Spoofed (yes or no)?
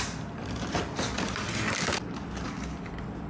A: no